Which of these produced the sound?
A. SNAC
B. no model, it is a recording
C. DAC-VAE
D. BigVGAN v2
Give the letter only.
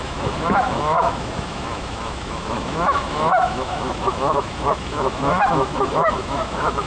C